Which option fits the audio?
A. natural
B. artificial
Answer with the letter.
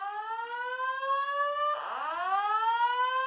A